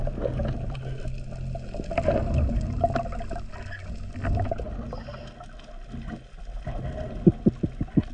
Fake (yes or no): no